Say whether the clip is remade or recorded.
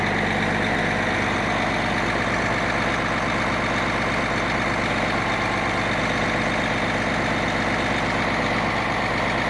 recorded